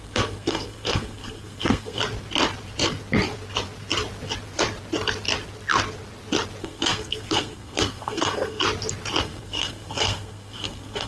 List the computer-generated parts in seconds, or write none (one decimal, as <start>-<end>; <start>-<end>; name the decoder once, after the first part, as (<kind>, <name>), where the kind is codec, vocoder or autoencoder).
0.0-2.0 (codec, SNAC); 6.6-8.6; 9.2-11.1